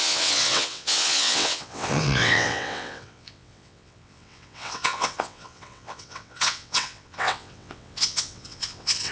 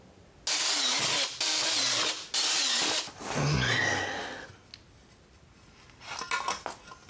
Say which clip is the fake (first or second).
first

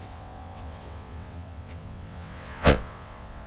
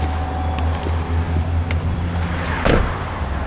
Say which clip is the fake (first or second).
first